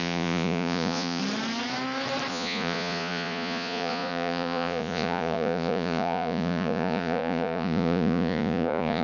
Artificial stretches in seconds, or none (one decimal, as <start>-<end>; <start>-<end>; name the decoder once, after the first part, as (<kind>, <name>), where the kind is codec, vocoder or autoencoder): 0.0-1.2 (vocoder, Vocos); 2.3-9.0